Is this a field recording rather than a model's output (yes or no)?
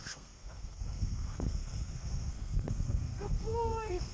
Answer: no